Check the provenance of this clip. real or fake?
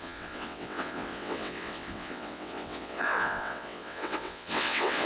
fake